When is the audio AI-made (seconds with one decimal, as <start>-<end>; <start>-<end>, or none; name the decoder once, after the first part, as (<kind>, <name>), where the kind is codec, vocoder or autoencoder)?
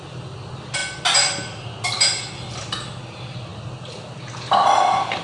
none